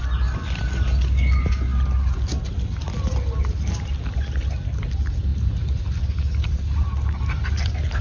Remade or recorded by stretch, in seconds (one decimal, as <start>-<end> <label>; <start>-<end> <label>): 0.0-8.0 recorded